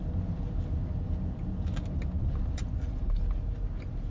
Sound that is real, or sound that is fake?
real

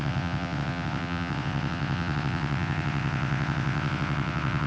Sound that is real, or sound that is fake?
fake